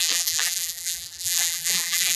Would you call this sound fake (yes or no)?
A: yes